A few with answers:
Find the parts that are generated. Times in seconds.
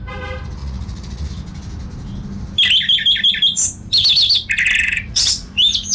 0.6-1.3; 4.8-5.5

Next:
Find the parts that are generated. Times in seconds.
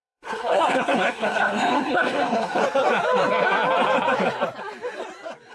0.0-2.6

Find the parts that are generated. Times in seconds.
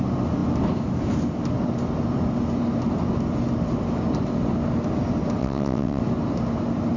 5.4-6.0